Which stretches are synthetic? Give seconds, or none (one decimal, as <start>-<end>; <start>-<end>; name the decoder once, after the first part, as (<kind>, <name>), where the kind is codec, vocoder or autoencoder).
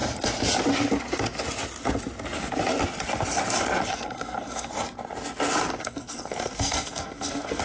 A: 3.9-4.7 (codec, SNAC); 5.8-7.6